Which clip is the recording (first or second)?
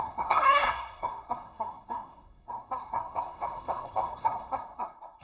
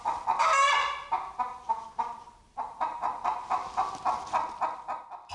second